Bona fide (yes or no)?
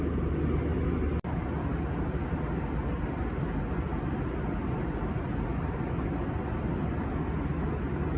yes